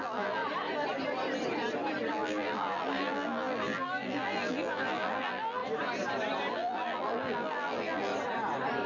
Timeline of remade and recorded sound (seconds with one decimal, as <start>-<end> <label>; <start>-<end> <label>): 0.0-0.4 remade; 0.4-2.1 recorded; 2.1-5.6 remade; 5.6-6.5 recorded; 6.5-8.1 remade; 8.1-8.9 recorded